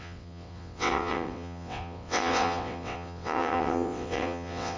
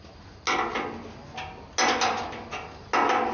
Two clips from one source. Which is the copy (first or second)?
first